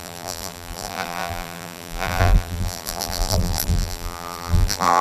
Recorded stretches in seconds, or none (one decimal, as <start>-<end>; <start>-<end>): none